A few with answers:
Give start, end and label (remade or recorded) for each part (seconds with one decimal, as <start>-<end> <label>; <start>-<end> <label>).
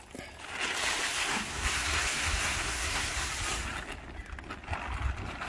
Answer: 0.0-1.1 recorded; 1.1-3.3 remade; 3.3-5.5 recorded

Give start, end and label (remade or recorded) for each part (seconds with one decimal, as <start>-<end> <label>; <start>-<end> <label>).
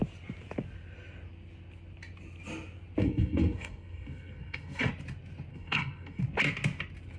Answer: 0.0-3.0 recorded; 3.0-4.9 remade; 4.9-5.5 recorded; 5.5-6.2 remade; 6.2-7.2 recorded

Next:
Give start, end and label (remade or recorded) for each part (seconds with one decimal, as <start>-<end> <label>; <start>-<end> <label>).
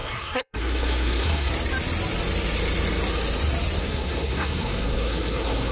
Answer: 0.0-1.5 remade; 1.5-3.8 recorded; 3.8-5.7 remade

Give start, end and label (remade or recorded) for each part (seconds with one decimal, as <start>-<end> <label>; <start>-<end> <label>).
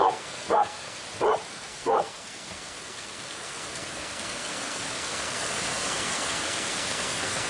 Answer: 0.0-1.0 remade; 1.0-1.5 recorded; 1.5-7.5 remade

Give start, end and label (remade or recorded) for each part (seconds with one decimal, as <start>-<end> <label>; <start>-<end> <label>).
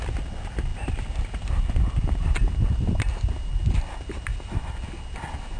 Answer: 0.0-5.6 recorded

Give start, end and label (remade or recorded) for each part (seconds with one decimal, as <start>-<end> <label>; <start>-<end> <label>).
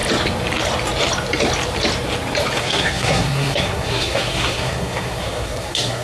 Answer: 0.0-2.6 recorded; 2.6-6.0 remade